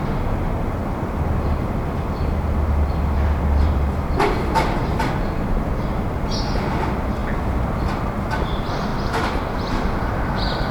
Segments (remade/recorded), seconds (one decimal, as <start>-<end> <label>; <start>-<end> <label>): 0.0-0.8 recorded; 0.8-5.1 remade; 5.1-10.7 recorded